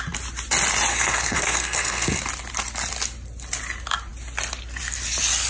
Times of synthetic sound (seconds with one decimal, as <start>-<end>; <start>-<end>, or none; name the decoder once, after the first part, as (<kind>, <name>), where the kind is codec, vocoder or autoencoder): 0.9-2.2 (codec, SNAC)